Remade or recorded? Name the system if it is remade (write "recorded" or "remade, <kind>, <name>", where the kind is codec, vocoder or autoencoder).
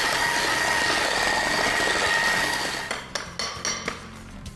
recorded